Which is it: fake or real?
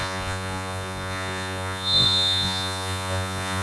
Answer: fake